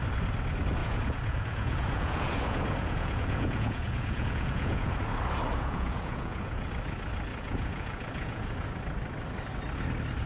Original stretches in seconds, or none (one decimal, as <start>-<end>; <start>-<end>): 0.0-0.8; 5.0-5.5; 6.7-7.3; 8.7-10.3